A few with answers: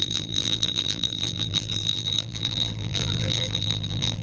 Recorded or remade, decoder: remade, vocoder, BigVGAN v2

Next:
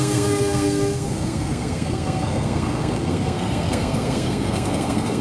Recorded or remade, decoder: remade, codec, SNAC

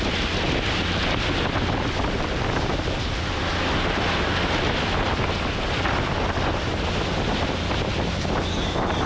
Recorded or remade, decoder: recorded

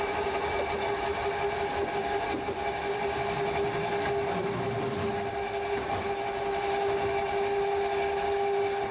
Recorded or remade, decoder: recorded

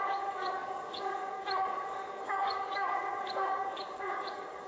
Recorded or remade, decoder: remade, codec, DAC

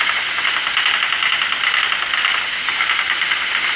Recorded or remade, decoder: recorded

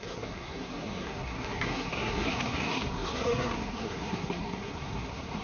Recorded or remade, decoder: remade, codec, SNAC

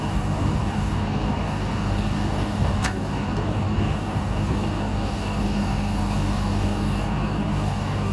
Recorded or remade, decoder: remade, codec, DAC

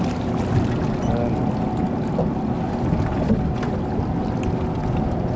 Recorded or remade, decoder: recorded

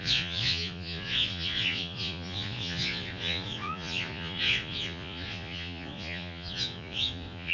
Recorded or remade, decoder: remade, vocoder, Vocos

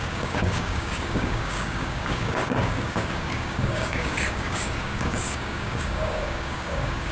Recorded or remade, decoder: remade, codec, DAC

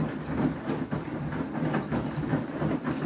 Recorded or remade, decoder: recorded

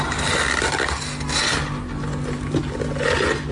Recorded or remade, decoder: recorded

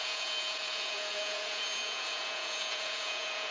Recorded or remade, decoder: remade, vocoder, Vocos